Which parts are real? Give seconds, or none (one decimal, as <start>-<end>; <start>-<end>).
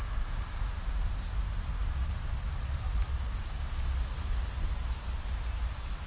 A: 0.0-6.1